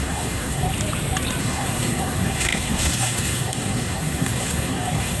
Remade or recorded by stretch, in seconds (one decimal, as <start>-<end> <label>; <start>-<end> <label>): 0.0-0.7 remade; 0.7-1.4 recorded; 1.4-5.2 remade